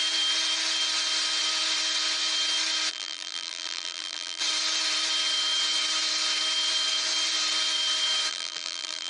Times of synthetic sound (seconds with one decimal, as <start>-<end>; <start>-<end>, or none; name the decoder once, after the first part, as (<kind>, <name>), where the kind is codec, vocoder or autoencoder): 2.9-4.4 (vocoder, BigVGAN v2); 8.3-9.1